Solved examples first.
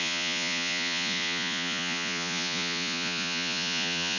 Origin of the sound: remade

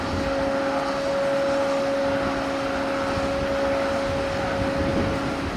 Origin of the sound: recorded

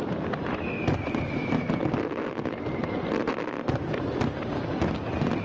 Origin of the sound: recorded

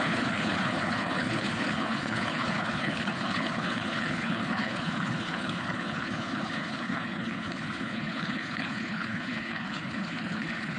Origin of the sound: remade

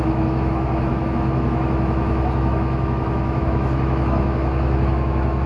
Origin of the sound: remade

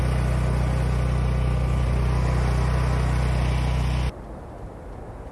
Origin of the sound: recorded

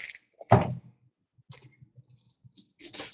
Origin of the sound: recorded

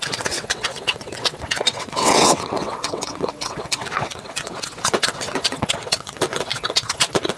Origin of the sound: remade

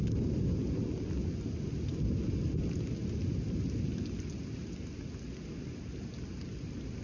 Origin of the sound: recorded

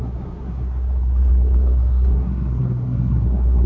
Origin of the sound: remade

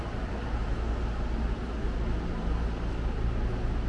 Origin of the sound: recorded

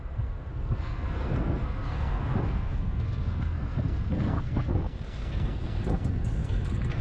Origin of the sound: remade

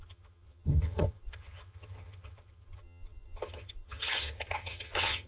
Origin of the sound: remade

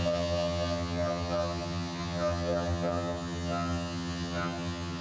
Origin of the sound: remade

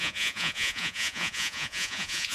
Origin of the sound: remade